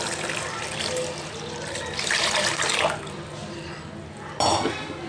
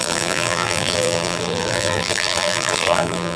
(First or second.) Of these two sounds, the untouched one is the first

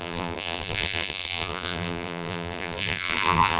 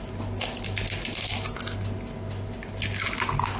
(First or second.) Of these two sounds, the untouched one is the second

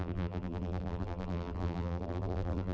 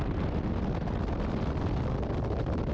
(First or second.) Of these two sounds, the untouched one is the second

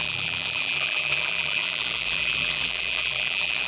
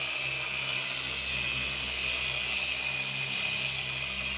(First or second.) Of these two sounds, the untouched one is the second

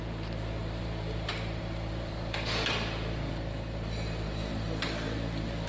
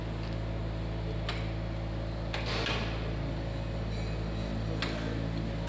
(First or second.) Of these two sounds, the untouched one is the second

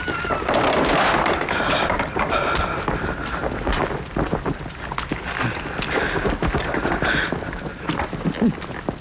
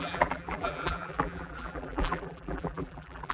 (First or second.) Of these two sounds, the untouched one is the first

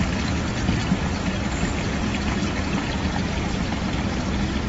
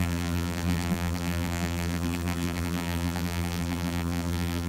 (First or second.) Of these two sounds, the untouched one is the first